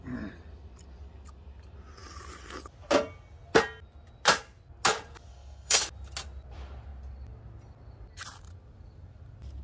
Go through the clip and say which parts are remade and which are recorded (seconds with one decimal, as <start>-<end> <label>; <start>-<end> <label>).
0.0-5.3 recorded; 5.3-5.8 remade; 5.8-9.6 recorded